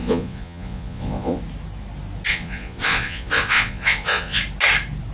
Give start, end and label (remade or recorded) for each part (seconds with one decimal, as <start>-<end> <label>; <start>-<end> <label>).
0.0-1.4 remade; 1.4-2.3 recorded; 2.3-4.4 remade; 4.4-5.1 recorded